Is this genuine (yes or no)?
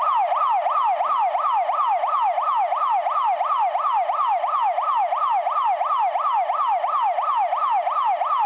yes